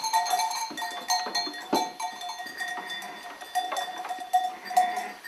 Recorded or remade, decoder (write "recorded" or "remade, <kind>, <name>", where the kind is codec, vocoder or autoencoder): recorded